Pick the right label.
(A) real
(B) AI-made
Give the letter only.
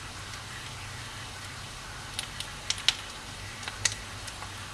A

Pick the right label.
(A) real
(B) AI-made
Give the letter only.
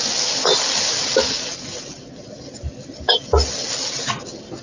A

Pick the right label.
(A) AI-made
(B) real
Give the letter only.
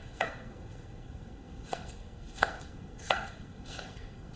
A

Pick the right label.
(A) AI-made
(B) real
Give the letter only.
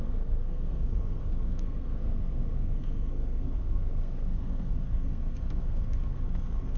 A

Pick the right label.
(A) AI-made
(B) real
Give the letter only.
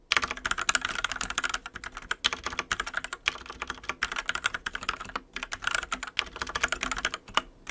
B